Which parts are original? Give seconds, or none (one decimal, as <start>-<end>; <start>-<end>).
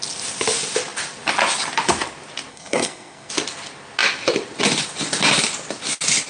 0.0-2.5; 3.3-6.3